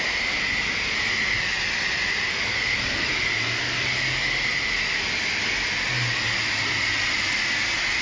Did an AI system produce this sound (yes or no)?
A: no